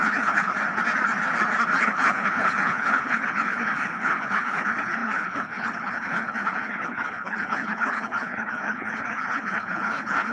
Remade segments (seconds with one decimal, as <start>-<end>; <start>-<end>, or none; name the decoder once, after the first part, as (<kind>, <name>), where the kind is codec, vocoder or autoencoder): 0.0-0.5 (codec, HILCodec); 1.8-10.3